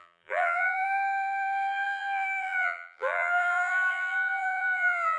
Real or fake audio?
fake